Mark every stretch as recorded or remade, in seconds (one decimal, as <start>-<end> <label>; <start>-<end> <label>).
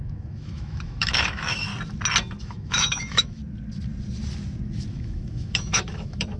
0.0-1.7 remade; 1.7-2.4 recorded; 2.4-3.4 remade; 3.4-4.9 recorded; 4.9-6.4 remade